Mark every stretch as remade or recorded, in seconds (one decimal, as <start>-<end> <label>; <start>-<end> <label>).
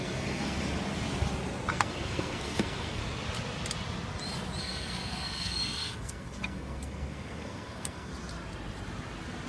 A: 0.0-0.6 remade; 0.6-1.7 recorded; 1.7-3.0 remade; 3.0-4.6 recorded; 4.6-8.1 remade; 8.1-9.5 recorded